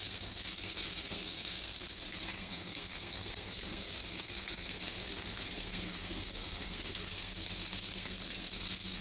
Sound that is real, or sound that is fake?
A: fake